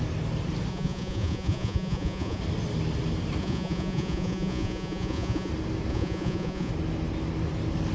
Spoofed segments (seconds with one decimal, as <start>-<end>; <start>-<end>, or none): 0.7-2.4; 3.4-5.5; 5.9-6.7